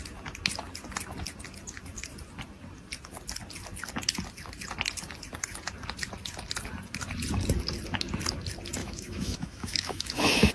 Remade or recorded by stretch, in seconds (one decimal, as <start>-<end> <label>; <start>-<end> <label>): 0.0-8.8 recorded; 8.8-10.5 remade